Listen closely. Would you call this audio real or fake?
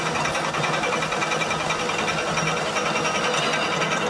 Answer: real